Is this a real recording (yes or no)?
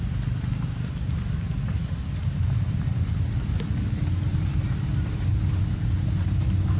yes